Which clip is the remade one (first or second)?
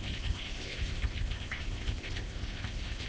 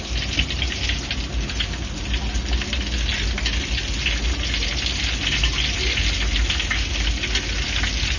first